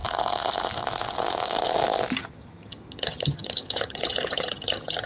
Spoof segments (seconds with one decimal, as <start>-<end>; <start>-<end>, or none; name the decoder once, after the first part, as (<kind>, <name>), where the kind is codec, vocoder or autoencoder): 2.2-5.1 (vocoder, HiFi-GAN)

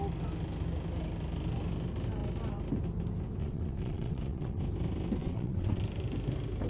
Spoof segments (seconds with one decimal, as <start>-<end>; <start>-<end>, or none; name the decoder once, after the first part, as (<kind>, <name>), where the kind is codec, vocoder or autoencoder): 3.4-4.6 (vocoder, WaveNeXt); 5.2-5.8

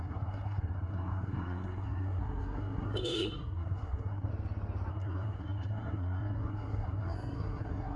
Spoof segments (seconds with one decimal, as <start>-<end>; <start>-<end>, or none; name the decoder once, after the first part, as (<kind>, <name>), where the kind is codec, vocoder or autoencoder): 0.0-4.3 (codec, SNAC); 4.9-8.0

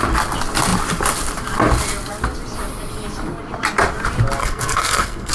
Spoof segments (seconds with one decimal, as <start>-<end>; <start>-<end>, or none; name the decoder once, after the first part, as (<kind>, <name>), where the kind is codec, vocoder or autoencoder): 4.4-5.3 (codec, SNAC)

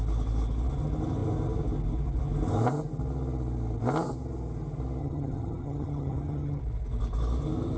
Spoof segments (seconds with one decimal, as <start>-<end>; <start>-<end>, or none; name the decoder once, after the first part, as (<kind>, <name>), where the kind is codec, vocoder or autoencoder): 5.0-6.6 (vocoder, HiFi-GAN)

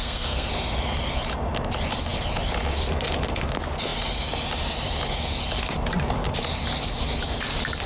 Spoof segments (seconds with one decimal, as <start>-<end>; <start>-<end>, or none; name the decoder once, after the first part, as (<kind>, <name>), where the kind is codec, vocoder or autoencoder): 0.0-0.5 (codec, SNAC)

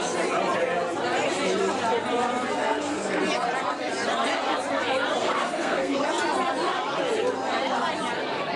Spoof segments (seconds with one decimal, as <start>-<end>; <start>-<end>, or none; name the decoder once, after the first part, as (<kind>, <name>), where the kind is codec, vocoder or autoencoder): 2.6-3.2 (codec, SNAC); 5.2-6.0

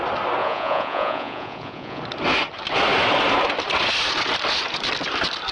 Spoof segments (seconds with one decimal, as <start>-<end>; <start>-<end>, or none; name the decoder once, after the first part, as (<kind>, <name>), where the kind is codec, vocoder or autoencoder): 0.4-2.0 (vocoder, Vocos)